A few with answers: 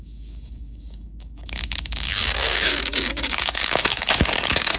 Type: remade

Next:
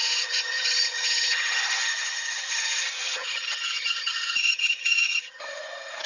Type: remade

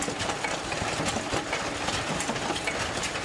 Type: recorded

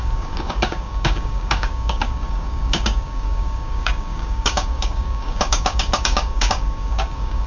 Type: remade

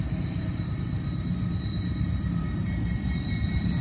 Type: remade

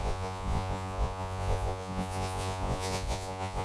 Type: remade